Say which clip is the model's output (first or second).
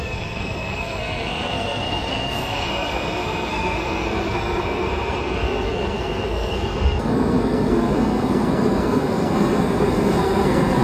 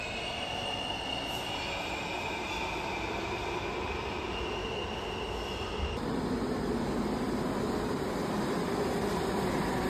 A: first